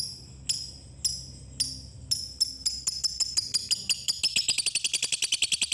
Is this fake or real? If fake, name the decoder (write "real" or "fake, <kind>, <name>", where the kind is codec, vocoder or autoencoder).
real